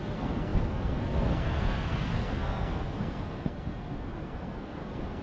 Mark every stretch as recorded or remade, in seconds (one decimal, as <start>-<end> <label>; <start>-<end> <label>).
0.0-5.2 remade